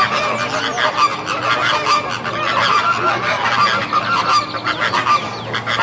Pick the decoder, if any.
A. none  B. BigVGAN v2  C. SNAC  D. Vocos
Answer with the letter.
A